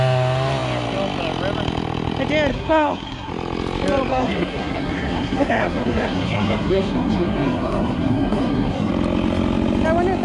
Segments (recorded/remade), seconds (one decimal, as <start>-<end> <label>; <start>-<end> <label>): 0.0-2.5 recorded; 2.5-3.3 remade; 3.3-4.1 recorded; 4.1-8.9 remade; 8.9-10.2 recorded